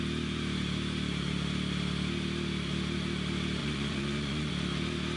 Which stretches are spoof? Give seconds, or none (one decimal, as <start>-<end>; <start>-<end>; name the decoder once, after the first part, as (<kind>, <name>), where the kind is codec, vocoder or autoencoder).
3.6-4.5 (vocoder, Vocos)